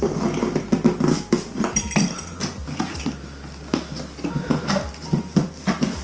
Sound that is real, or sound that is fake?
real